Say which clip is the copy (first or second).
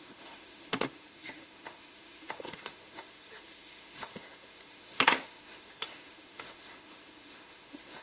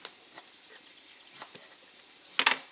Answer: first